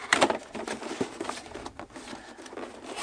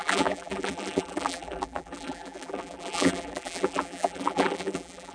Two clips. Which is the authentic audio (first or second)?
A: first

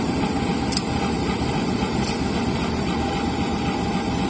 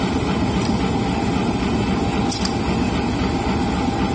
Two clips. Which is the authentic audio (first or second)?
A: second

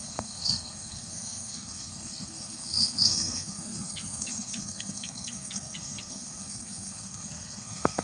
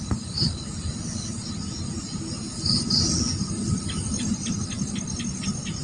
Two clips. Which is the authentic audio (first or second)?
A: second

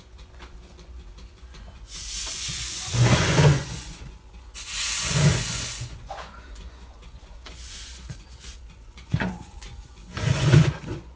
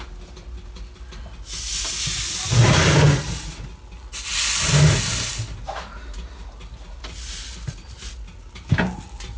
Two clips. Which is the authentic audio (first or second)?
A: second